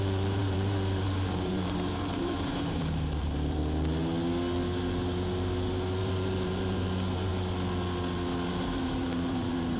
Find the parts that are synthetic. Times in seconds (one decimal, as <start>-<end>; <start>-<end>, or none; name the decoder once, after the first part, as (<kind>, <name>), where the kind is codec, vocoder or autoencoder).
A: 0.0-3.6 (vocoder, BigVGAN v2); 6.0-7.3; 8.5-9.8